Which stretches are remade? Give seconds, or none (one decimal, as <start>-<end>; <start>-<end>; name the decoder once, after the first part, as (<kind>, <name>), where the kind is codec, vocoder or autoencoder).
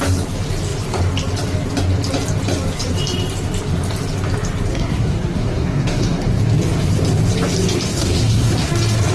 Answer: 4.7-6.4 (codec, SNAC); 7.9-8.7